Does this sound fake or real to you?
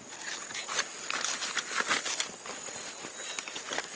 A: real